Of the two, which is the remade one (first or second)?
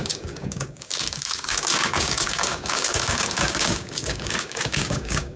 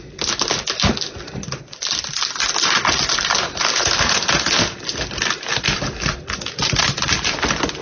first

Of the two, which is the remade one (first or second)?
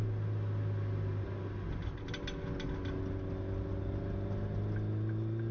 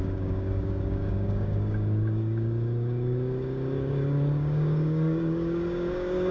second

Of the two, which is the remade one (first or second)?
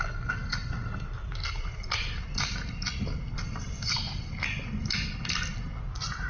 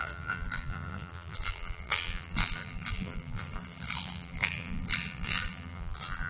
second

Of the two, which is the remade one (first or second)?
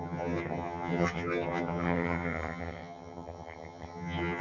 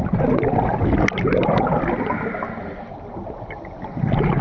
first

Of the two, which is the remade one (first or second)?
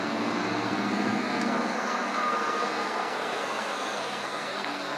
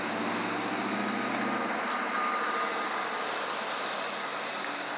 first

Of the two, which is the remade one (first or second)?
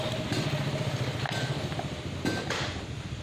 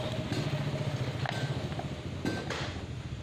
first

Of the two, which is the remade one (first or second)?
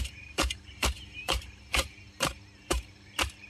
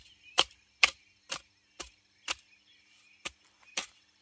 first